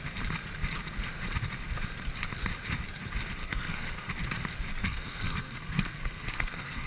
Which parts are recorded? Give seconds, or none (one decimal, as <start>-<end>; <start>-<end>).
0.0-3.4; 4.1-4.8